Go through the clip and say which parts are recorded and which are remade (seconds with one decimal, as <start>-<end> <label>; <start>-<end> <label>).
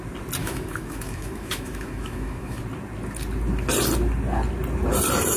0.0-0.4 recorded; 0.4-2.6 remade; 2.6-5.4 recorded